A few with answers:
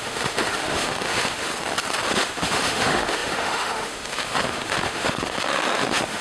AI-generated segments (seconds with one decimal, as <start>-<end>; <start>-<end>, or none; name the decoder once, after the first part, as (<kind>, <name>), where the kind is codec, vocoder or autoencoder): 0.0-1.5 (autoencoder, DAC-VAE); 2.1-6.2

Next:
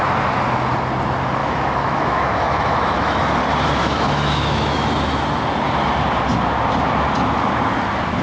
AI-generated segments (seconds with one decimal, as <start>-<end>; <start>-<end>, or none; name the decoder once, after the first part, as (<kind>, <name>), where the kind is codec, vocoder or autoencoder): 1.4-3.4 (autoencoder, DAC-VAE); 3.8-4.9

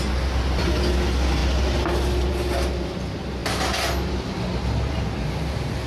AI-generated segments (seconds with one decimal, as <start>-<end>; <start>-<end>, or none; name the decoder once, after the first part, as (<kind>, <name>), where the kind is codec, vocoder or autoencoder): none

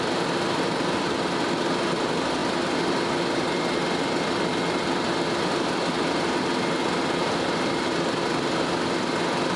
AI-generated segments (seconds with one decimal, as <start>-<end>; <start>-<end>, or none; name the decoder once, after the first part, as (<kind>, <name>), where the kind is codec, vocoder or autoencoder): none

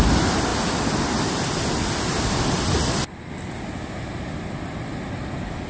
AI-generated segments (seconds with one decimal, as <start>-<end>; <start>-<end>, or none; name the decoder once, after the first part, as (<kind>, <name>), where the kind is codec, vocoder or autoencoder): none

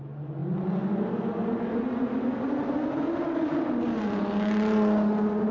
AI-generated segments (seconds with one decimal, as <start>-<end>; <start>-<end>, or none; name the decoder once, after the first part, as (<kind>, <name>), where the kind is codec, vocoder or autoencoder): none